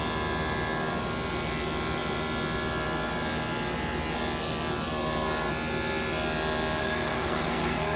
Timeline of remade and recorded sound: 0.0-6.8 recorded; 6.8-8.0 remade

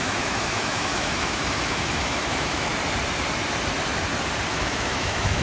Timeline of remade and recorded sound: 0.0-2.7 remade; 2.7-4.5 recorded; 4.5-5.4 remade

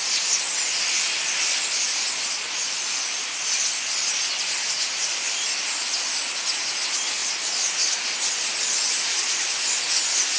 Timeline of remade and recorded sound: 0.0-7.2 recorded; 7.2-7.8 remade; 7.8-10.4 recorded